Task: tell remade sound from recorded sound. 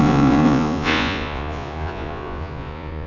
remade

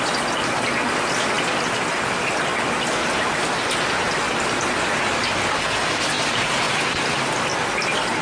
recorded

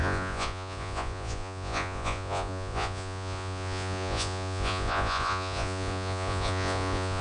remade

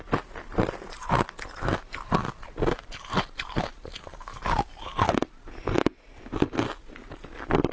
recorded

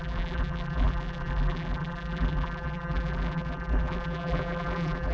remade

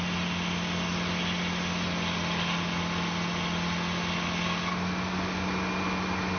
recorded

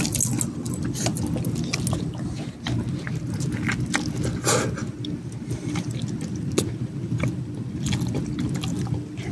recorded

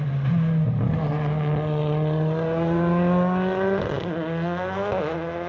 recorded